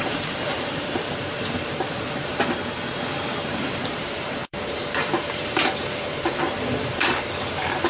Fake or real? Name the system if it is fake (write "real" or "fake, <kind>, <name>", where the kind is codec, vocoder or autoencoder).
fake, vocoder, BigVGAN v2